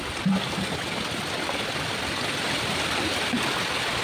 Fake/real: real